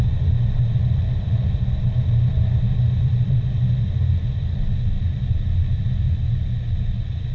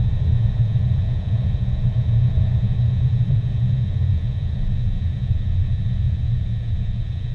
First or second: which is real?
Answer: first